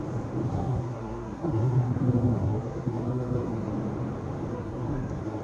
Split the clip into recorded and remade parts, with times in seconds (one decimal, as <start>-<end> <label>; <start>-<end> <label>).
0.0-0.5 recorded; 0.5-3.7 remade; 3.7-4.5 recorded; 4.5-5.4 remade